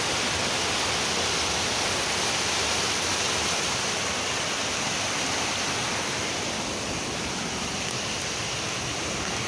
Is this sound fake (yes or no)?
no